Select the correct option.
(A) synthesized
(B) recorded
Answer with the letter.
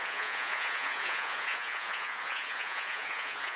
A